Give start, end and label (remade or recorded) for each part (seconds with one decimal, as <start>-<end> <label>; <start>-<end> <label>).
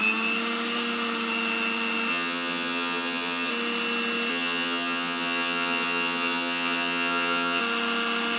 0.0-2.1 recorded; 2.1-3.5 remade; 3.5-4.3 recorded; 4.3-7.6 remade; 7.6-8.4 recorded